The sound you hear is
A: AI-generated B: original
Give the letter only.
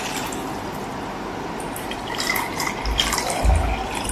B